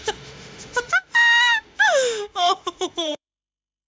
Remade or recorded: remade